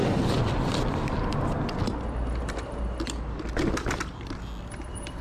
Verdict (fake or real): real